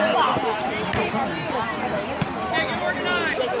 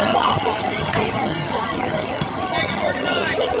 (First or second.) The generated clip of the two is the second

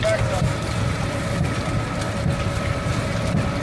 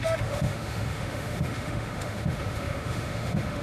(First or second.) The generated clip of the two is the second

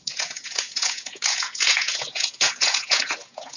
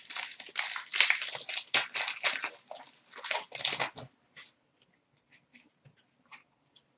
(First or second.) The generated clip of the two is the first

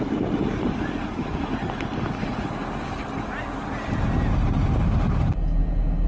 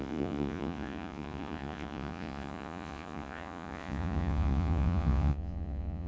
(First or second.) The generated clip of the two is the second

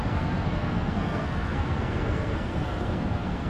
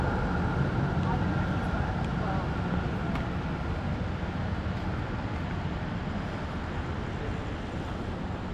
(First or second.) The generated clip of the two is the first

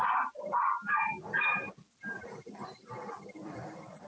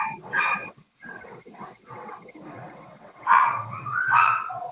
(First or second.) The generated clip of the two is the second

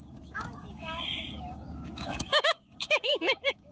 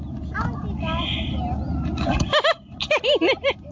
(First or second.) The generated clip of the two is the first